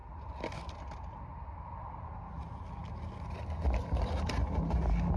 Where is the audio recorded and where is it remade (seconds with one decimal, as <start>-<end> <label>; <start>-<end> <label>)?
0.0-5.2 recorded